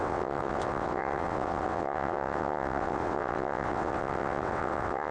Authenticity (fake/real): fake